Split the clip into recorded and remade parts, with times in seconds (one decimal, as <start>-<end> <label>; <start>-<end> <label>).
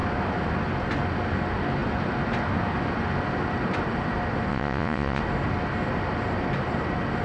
0.0-4.5 recorded; 4.5-5.2 remade; 5.2-7.2 recorded